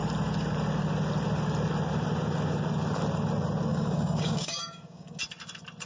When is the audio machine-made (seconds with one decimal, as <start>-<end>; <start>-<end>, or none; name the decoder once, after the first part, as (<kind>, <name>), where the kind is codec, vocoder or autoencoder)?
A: 3.7-5.2 (codec, DAC)